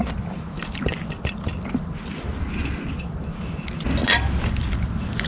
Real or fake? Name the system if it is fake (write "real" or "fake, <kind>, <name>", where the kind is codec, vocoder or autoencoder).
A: real